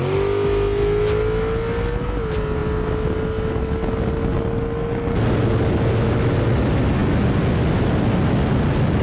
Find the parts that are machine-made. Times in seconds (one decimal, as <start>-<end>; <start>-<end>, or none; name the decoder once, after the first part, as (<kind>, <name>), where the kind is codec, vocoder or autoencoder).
none